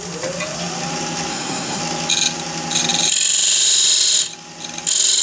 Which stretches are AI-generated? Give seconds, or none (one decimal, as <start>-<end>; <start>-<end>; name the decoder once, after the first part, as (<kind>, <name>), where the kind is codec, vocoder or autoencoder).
1.3-1.8 (codec, SNAC)